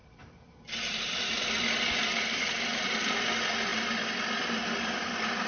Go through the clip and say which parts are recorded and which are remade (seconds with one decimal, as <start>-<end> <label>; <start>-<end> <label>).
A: 0.0-3.3 remade; 3.3-5.5 recorded